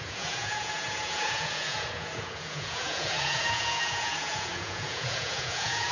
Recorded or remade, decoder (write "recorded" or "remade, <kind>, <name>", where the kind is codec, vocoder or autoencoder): remade, vocoder, Vocos